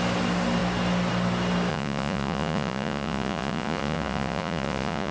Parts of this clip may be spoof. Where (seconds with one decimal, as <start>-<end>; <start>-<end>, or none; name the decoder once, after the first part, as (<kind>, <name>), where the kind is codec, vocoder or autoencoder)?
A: 1.7-5.1 (vocoder, Vocos)